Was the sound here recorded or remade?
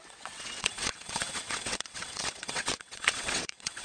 remade